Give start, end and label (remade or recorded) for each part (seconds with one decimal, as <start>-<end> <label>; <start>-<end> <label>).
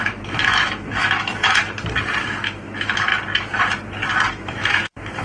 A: 0.0-1.6 remade; 1.6-2.2 recorded; 2.2-3.1 remade; 3.1-4.3 recorded; 4.3-5.2 remade